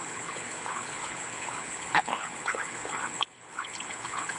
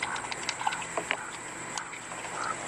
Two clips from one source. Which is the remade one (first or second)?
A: first